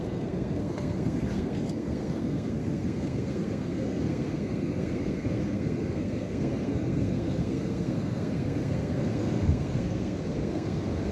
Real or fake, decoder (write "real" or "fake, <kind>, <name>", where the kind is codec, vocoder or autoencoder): fake, codec, SNAC